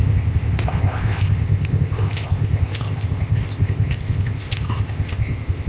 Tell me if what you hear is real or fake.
fake